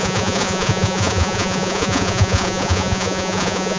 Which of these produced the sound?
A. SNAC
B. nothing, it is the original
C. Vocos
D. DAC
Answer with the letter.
C